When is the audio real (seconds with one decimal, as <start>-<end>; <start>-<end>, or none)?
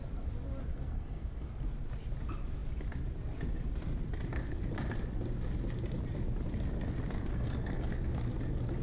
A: 0.0-0.7; 1.5-7.3; 7.9-8.8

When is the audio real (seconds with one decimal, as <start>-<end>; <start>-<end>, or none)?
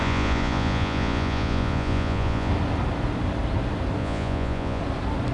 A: 2.5-4.0; 4.8-5.3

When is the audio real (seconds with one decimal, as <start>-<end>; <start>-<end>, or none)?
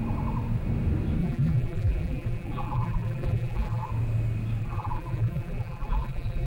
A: 0.0-1.2; 3.9-4.6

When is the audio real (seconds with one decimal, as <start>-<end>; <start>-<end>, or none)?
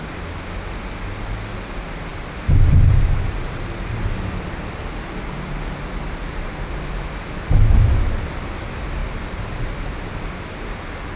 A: 0.0-11.2